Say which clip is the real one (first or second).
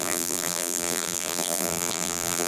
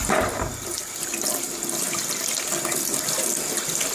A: second